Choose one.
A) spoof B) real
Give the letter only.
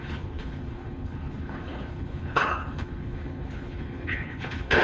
A